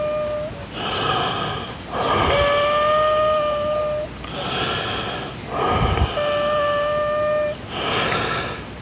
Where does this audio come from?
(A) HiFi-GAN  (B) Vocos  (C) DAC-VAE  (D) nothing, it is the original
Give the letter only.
D